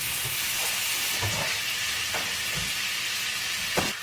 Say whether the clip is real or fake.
real